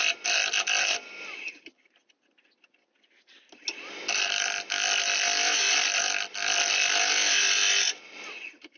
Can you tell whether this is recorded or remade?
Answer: recorded